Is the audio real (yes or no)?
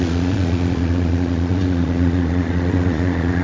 no